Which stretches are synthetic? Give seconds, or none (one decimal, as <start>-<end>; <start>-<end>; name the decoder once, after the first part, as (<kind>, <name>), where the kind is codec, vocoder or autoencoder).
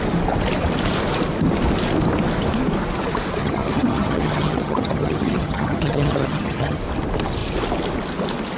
3.4-6.8 (vocoder, HiFi-GAN)